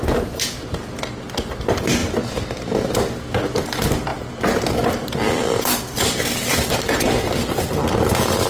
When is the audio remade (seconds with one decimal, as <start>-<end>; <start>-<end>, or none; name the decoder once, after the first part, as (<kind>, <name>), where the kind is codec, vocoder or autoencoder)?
5.0-8.1 (vocoder, BigVGAN v2)